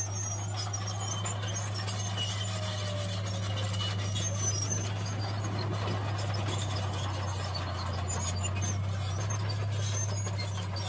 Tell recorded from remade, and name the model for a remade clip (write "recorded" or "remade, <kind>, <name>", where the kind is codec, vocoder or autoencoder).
recorded